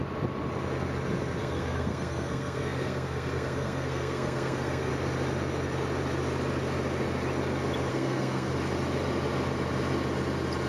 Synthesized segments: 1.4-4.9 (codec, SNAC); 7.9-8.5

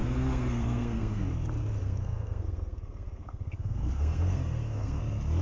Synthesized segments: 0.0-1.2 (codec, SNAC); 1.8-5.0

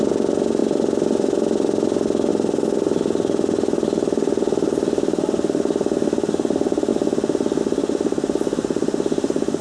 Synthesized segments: none

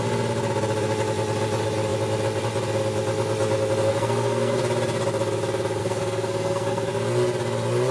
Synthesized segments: 3.9-4.6 (codec, SNAC); 5.8-6.9